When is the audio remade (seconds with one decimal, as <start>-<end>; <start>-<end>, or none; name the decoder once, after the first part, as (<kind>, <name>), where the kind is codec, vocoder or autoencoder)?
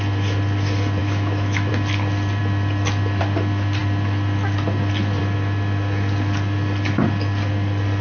1.0-1.7 (autoencoder, DAC-VAE)